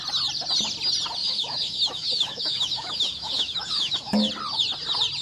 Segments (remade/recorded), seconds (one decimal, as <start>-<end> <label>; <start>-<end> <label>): 0.0-1.2 recorded; 1.2-4.3 remade; 4.3-5.2 recorded